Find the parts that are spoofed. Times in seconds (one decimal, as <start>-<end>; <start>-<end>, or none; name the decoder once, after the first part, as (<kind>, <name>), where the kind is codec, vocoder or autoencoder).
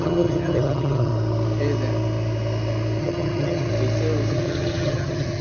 0.0-1.1 (vocoder, HiFi-GAN); 3.0-3.7; 4.3-5.4